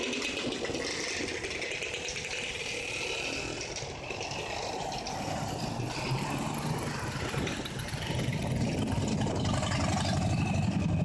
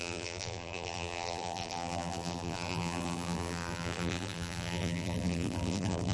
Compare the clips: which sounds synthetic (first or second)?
second